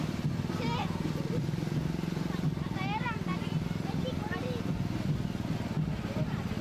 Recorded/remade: recorded